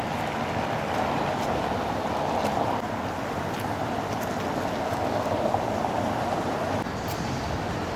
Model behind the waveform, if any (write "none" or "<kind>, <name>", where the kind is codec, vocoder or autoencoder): none